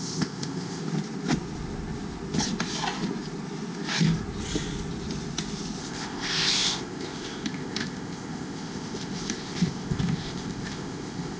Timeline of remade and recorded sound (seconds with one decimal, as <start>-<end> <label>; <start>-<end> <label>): 0.0-0.8 remade; 0.8-5.8 recorded; 5.8-11.4 remade